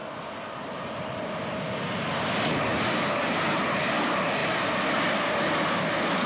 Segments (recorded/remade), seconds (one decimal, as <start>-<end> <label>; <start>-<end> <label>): 0.0-6.3 recorded